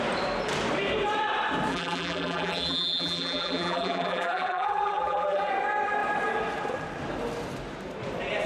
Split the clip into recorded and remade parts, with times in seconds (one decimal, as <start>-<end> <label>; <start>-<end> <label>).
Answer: 0.0-1.7 recorded; 1.7-5.5 remade; 5.5-8.5 recorded